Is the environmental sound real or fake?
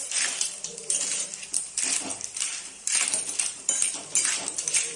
fake